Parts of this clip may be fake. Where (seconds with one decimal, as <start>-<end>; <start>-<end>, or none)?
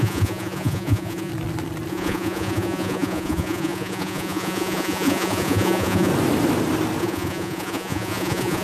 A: 0.0-1.3; 1.9-6.1; 7.0-8.6